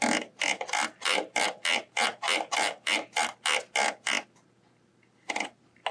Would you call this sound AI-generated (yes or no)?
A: no